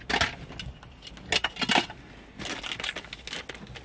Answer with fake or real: real